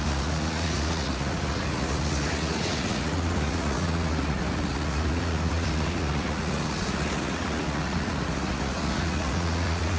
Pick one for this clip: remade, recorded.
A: remade